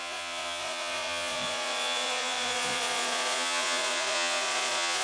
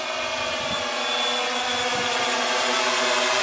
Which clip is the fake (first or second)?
first